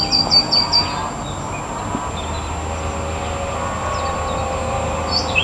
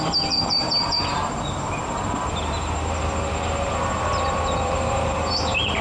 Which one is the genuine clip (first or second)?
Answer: first